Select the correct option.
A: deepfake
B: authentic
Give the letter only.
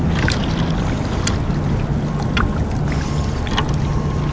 B